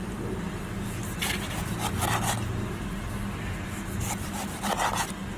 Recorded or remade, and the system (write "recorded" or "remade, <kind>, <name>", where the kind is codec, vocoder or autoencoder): recorded